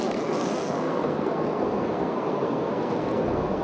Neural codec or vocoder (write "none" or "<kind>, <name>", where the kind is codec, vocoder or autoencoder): codec, SNAC